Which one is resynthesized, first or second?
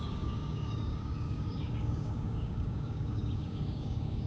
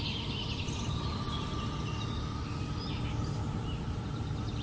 first